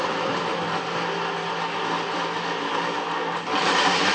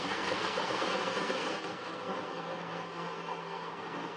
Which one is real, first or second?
first